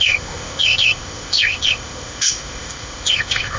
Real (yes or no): no